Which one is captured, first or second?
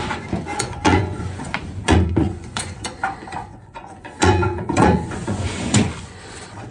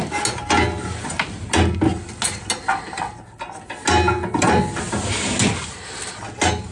second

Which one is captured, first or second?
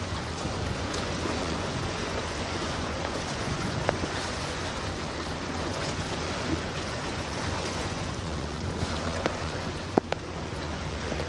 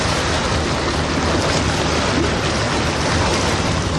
second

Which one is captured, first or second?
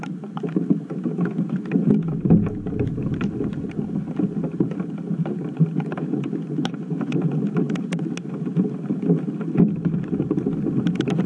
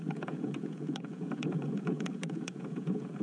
first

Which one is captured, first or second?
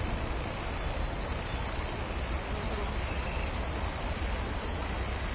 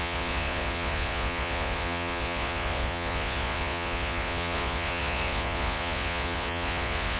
first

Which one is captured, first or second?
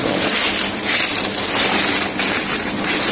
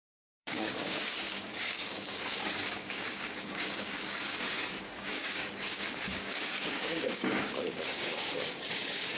first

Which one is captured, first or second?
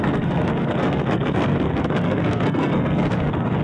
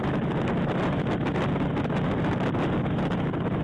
second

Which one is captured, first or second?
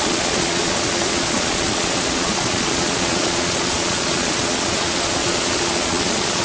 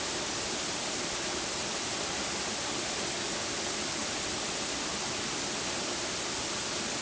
second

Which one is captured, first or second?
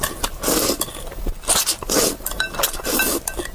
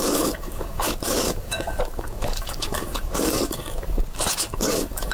first